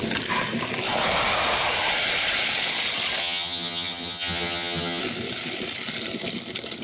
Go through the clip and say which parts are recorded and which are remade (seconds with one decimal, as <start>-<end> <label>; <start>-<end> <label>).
0.0-3.2 recorded; 3.2-5.0 remade; 5.0-6.8 recorded